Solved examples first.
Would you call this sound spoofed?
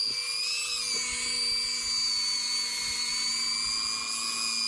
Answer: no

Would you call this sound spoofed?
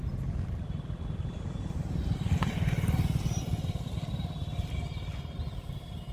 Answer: yes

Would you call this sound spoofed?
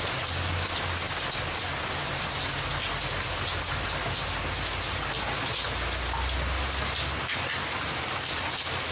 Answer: no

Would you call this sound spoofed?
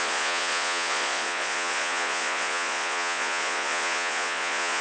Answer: yes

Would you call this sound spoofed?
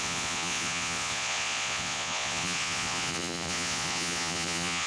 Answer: yes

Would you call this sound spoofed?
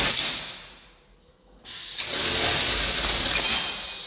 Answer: no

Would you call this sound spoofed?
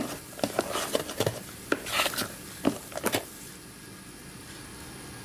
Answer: no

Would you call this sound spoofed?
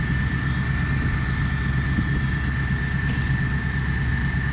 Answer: no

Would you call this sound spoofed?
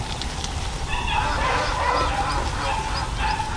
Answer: no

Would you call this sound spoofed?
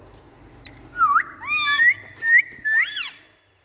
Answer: no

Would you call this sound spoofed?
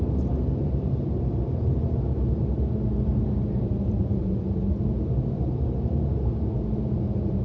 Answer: yes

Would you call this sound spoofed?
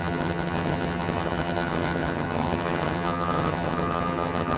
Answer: yes